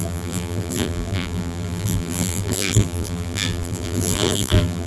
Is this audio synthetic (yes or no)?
yes